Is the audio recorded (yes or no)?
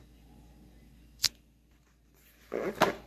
yes